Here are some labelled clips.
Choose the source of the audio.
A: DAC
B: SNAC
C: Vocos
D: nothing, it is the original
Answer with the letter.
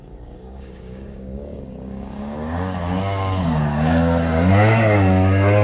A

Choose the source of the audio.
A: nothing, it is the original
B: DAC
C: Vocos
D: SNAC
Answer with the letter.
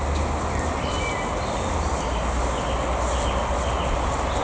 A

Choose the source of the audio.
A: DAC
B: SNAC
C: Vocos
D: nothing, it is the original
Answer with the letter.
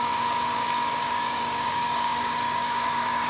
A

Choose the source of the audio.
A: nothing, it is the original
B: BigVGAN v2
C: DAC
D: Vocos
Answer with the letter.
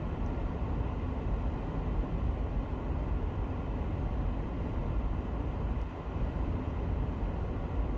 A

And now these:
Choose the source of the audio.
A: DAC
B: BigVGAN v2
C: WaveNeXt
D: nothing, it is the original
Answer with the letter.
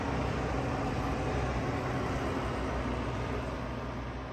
D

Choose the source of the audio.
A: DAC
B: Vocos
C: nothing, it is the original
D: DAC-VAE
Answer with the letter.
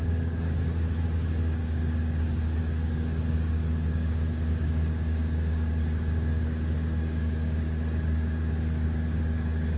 A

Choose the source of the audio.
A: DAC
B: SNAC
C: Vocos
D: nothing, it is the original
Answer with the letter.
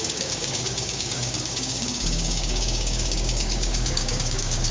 A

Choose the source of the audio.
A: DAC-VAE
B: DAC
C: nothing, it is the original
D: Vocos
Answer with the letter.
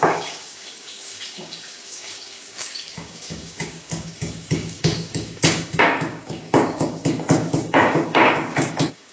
B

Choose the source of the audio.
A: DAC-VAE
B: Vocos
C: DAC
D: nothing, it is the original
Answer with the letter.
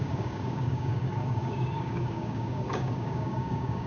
C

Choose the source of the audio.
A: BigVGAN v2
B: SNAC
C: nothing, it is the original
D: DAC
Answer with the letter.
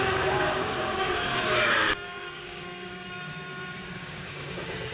D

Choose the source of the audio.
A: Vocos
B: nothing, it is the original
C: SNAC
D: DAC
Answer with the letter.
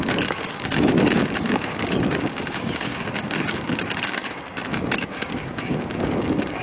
D